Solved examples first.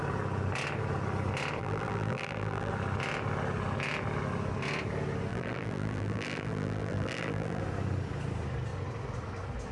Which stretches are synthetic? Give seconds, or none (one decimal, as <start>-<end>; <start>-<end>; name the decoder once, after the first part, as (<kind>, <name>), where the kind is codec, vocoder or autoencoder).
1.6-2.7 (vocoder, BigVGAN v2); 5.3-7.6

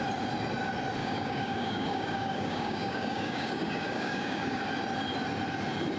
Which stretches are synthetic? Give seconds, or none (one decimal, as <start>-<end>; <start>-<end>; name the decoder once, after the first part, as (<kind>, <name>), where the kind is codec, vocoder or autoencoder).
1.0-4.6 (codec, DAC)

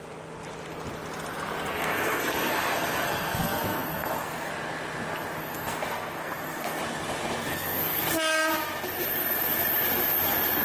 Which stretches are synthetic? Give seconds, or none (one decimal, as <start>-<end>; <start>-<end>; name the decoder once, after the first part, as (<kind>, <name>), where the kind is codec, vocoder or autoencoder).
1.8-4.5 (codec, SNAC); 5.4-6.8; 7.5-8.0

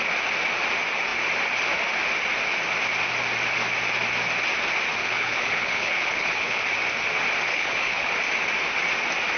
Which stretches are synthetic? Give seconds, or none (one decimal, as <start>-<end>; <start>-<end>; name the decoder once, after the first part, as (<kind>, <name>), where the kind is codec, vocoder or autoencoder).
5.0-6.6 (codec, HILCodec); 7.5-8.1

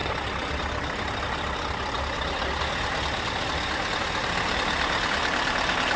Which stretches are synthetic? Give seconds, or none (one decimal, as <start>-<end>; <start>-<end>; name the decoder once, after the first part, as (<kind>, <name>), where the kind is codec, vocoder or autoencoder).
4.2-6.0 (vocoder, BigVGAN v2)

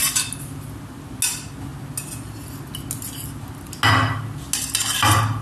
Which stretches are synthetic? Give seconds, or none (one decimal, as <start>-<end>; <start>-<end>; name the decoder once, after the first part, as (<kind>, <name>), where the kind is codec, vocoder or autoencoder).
none

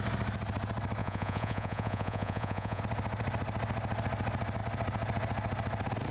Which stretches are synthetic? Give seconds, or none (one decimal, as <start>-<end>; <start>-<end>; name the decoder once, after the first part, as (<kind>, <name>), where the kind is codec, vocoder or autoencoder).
1.0-2.8 (vocoder, Vocos)